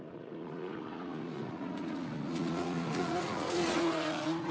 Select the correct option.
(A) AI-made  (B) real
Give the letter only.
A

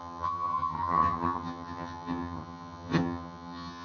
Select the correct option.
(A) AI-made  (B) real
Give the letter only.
A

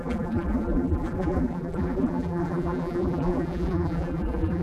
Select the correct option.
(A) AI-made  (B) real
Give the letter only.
A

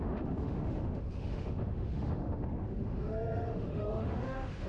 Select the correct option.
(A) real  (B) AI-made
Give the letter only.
B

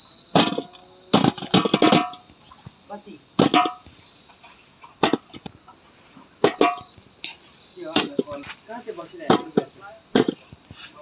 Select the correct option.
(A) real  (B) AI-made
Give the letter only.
A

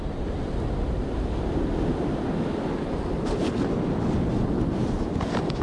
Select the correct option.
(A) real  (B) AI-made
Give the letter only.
A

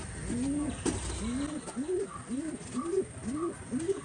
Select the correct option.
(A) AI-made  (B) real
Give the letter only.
B